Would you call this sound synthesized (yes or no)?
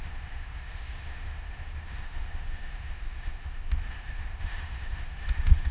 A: yes